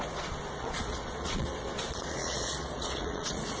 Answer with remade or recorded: remade